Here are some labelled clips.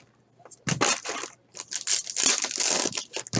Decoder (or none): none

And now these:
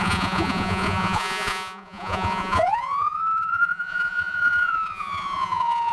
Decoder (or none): vocoder, Vocos